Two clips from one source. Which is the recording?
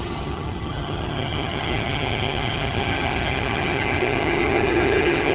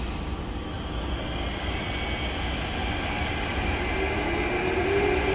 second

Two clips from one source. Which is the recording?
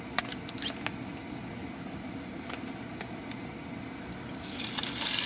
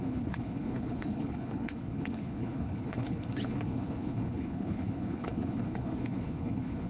first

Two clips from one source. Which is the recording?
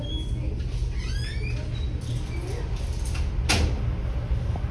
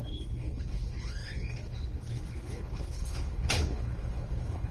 first